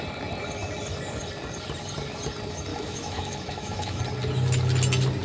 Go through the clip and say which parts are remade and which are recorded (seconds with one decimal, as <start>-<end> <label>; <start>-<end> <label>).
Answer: 0.0-2.7 recorded; 2.7-4.0 remade; 4.0-5.2 recorded